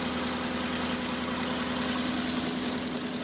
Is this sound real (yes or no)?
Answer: yes